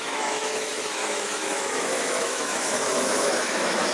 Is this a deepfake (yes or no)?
yes